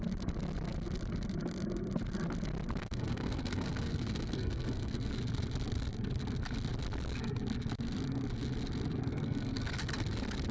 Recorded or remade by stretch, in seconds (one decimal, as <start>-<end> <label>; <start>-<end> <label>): 0.0-2.8 recorded; 2.8-5.1 remade; 5.1-9.1 recorded; 9.1-9.7 remade; 9.7-10.5 recorded